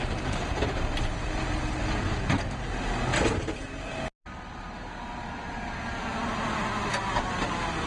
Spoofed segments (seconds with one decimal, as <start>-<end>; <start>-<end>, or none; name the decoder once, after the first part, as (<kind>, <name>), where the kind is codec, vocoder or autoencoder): 1.8-2.4 (vocoder, BigVGAN v2)